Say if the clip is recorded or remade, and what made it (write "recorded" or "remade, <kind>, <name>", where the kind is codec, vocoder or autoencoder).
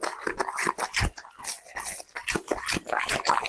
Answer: recorded